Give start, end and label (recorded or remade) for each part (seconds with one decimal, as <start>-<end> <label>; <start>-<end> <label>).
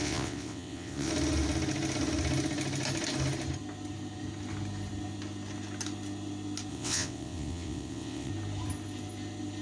0.0-1.1 remade; 1.1-6.7 recorded; 6.7-8.3 remade; 8.3-9.6 recorded